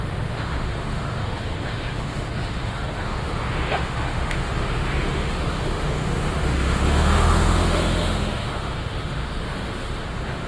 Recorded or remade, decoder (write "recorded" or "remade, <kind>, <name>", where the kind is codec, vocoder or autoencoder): remade, autoencoder, DAC-VAE